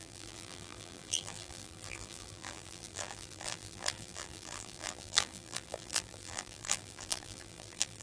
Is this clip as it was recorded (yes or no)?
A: no